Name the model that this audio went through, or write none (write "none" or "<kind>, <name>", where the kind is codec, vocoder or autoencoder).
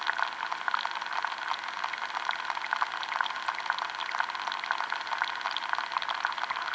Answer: none